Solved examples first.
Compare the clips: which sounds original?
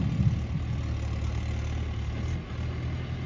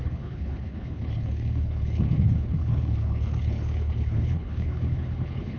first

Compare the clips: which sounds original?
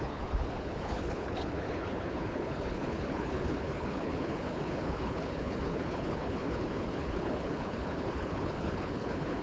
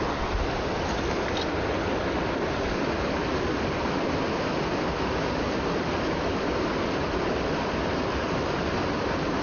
second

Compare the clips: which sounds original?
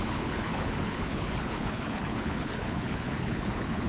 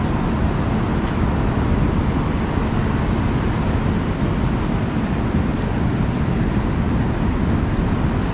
second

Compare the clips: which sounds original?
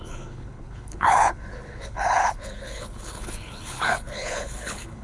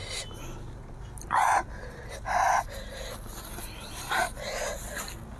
second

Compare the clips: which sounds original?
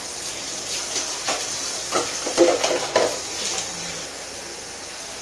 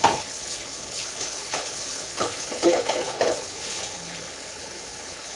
first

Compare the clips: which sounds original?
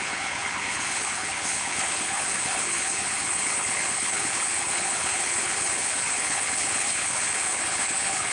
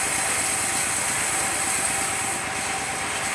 second